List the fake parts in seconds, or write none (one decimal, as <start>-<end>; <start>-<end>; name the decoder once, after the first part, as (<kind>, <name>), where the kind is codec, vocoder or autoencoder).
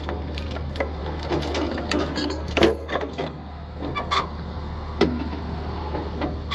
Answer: 0.0-6.5 (codec, SNAC)